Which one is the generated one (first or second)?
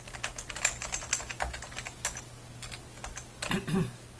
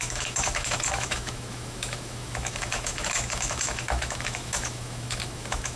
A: second